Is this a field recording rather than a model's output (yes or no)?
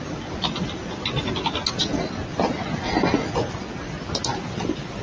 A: yes